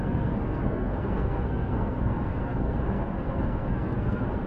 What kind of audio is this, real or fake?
fake